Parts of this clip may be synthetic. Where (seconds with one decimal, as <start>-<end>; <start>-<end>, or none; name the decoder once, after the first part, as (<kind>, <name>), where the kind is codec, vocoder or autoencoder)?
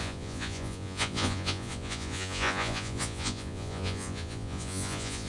0.0-5.3 (vocoder, Vocos)